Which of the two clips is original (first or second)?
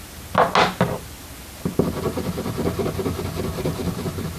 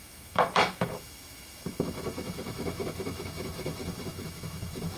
first